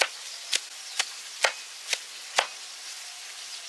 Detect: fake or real real